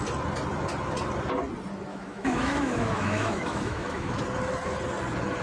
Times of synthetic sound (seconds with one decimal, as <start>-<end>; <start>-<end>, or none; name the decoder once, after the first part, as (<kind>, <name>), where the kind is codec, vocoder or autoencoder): 1.9-4.2 (autoencoder, DAC-VAE)